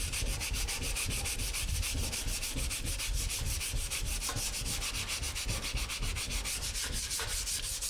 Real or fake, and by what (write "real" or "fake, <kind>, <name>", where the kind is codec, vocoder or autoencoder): real